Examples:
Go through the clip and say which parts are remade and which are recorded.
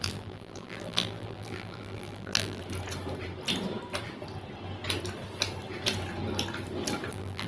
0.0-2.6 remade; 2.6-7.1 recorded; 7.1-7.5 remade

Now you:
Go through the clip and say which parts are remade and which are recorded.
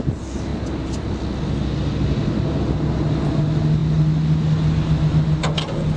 0.0-6.0 recorded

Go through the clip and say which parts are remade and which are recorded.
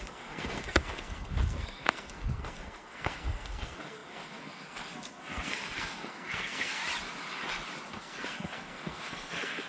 0.0-6.8 remade; 6.8-7.9 recorded; 7.9-9.7 remade